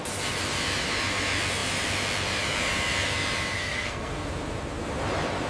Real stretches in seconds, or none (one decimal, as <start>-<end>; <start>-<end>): 0.0-3.6; 4.3-5.5